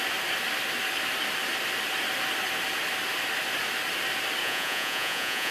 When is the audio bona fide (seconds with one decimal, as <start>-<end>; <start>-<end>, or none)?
0.0-4.4